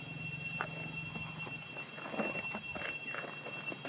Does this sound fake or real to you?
real